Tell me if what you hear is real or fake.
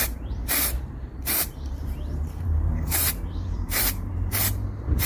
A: fake